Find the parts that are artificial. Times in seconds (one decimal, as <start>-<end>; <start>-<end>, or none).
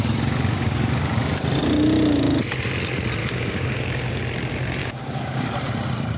3.2-4.2; 4.8-5.5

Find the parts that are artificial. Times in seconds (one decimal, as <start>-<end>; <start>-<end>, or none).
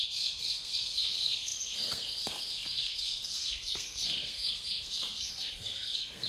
0.0-6.3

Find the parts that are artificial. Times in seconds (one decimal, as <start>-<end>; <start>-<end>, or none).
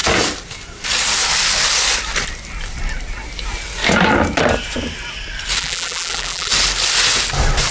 5.6-6.5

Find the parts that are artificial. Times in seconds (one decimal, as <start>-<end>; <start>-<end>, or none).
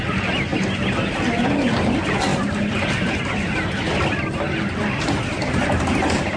none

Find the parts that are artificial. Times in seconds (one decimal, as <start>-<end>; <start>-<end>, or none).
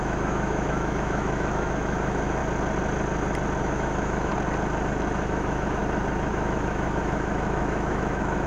0.0-2.4; 3.6-4.3; 5.2-5.8; 6.3-8.5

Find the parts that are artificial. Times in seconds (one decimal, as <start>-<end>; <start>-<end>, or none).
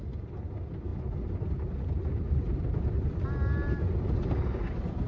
none